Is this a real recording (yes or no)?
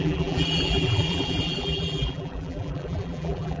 no